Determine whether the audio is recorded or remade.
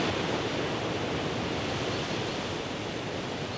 recorded